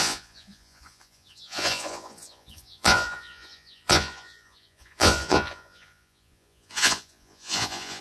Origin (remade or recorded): remade